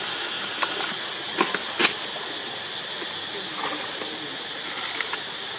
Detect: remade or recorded recorded